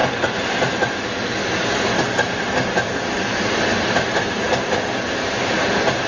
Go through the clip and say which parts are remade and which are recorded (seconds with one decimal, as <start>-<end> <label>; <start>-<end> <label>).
0.0-6.1 recorded

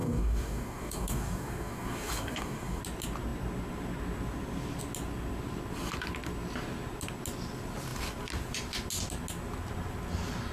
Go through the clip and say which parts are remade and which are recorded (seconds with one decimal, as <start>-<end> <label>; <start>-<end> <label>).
0.0-2.8 remade; 2.8-10.5 recorded

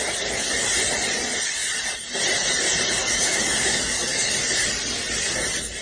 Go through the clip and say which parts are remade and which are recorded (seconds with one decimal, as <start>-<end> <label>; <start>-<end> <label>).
0.0-3.0 recorded; 3.0-4.3 remade; 4.3-5.8 recorded

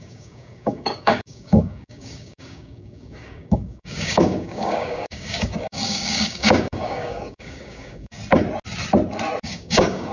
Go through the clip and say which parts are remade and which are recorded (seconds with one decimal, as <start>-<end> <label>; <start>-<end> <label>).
0.0-8.2 remade; 8.2-9.4 recorded; 9.4-10.1 remade